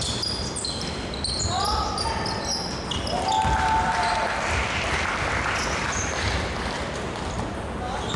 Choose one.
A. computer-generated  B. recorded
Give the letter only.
B